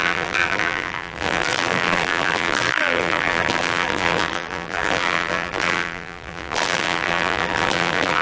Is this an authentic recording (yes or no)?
no